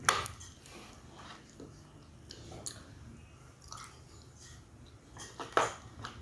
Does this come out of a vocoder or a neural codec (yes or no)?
no